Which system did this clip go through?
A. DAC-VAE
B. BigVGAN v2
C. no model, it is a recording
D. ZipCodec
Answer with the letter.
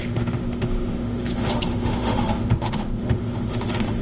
A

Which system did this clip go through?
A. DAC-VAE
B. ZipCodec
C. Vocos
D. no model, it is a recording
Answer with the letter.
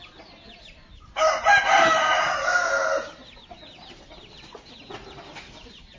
D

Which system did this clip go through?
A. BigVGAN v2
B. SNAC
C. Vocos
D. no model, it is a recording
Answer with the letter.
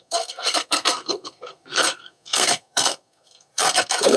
B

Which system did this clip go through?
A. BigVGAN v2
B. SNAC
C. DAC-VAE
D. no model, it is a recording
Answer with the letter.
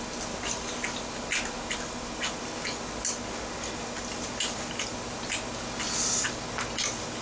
D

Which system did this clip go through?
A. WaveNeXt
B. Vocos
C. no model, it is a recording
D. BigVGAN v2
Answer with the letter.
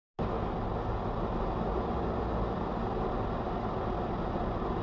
C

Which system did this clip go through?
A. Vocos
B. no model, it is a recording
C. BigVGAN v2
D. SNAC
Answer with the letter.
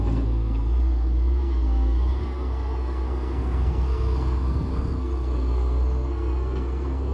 D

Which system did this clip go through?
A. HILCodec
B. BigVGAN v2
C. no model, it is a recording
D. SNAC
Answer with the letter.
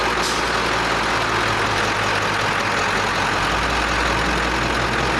C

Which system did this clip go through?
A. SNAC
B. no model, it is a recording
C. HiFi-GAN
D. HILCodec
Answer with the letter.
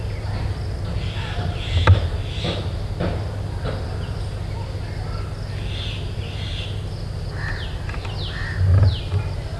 B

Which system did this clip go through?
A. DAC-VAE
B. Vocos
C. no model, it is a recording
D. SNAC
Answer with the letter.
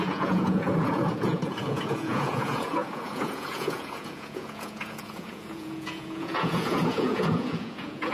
B